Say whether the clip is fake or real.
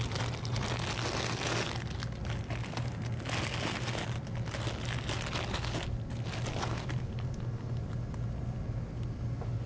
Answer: real